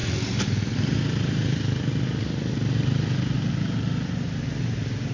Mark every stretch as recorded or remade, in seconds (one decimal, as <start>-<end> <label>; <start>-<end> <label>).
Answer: 0.0-5.1 recorded